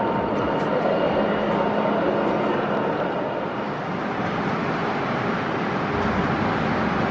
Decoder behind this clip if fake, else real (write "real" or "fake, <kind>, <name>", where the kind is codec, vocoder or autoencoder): real